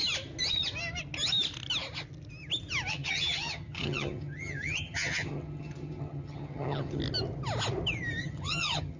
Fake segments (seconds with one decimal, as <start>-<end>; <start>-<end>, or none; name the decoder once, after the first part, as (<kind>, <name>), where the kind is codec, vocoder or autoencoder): 2.9-7.0 (vocoder, HiFi-GAN); 8.2-9.0